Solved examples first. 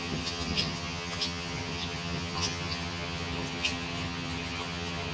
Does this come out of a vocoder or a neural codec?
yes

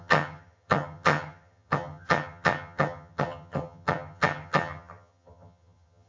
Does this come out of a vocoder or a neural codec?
yes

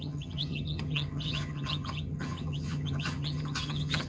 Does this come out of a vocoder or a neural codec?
yes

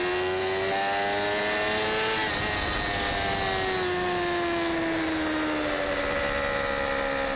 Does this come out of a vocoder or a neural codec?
no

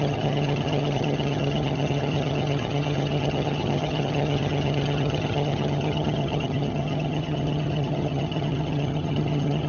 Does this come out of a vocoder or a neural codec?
yes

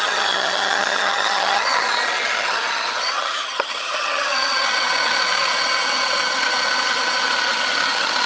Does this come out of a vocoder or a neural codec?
yes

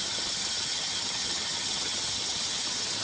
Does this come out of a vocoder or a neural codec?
yes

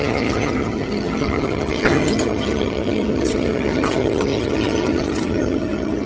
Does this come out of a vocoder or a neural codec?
yes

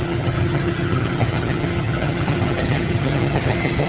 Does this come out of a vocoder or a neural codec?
yes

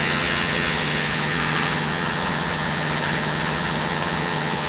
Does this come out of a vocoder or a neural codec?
yes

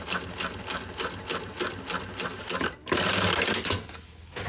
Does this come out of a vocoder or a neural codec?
no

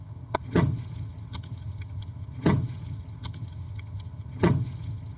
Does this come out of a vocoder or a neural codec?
yes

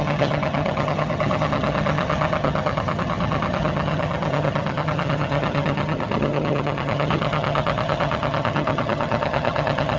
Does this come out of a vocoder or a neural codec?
yes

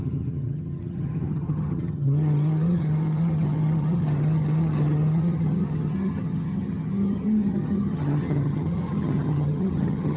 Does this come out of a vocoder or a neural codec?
yes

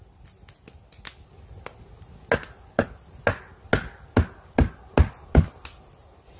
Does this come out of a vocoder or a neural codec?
no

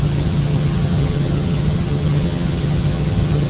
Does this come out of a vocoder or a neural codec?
yes